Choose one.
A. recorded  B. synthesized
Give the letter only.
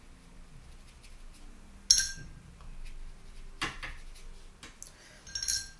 A